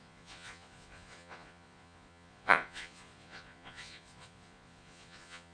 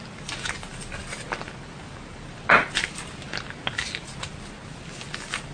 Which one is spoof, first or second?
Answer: first